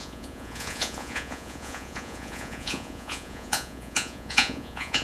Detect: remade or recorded remade